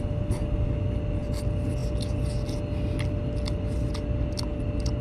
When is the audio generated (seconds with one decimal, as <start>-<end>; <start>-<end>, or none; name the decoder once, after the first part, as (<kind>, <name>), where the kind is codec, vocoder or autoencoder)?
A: none